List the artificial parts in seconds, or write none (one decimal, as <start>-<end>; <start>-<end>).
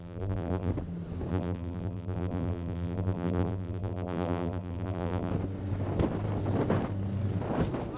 0.0-0.7; 1.3-5.3